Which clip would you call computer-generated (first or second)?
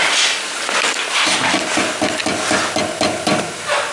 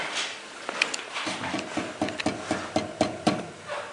second